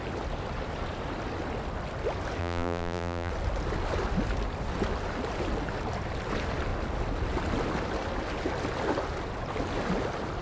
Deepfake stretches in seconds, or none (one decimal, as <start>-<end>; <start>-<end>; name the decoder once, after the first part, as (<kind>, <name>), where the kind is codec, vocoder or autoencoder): 2.4-3.3 (vocoder, BigVGAN v2)